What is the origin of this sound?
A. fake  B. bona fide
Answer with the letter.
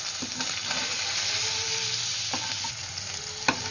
B